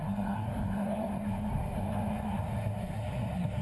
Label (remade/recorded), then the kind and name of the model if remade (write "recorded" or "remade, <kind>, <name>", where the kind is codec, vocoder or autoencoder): remade, codec, SNAC